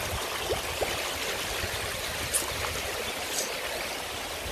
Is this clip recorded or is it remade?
recorded